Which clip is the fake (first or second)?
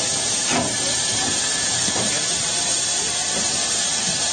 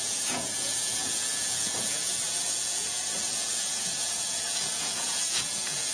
second